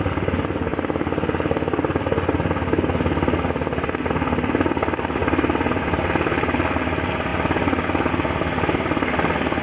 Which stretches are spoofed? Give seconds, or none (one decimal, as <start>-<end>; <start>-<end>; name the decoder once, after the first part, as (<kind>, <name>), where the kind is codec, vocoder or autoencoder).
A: 0.0-0.7 (vocoder, BigVGAN v2); 4.1-5.2; 5.7-9.6